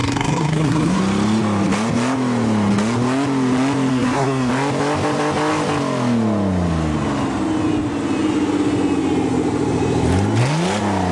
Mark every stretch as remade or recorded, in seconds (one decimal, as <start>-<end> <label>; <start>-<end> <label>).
0.0-1.0 remade; 1.0-3.9 recorded; 3.9-4.5 remade; 4.5-11.1 recorded